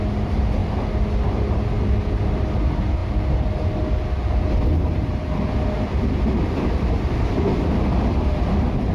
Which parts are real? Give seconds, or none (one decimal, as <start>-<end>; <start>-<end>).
0.0-8.9